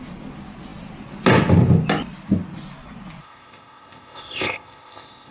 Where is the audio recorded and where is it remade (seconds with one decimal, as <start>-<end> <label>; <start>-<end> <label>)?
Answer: 0.0-3.2 recorded; 3.2-5.3 remade